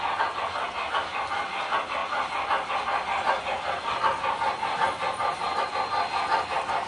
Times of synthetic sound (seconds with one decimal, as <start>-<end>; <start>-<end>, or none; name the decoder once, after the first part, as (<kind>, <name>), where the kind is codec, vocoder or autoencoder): none